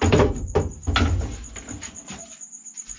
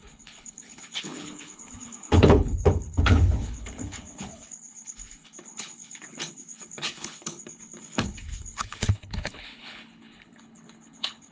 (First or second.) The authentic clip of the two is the first